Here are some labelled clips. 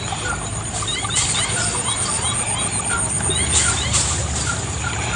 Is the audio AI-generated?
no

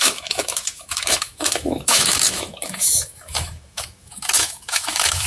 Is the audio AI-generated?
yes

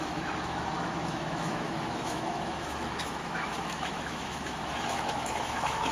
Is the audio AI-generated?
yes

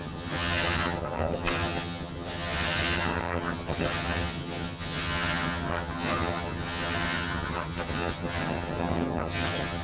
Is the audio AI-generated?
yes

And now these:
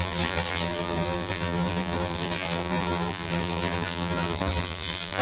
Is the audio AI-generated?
yes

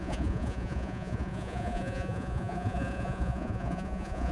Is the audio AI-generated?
yes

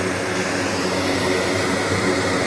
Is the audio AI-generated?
no